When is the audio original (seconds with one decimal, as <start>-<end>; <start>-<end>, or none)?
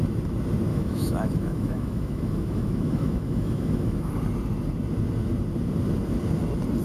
0.0-0.7; 4.1-6.8